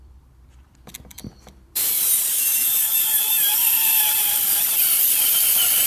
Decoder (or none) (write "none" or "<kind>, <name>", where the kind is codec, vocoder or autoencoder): vocoder, BigVGAN v2